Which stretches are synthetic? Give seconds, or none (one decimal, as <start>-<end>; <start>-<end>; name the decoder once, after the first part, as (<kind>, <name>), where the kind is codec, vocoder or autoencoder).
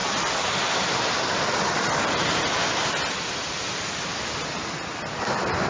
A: none